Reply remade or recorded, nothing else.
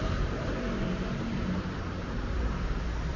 remade